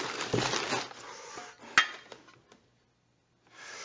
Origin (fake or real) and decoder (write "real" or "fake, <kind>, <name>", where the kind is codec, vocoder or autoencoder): real